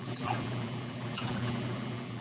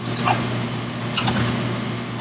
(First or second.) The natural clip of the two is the second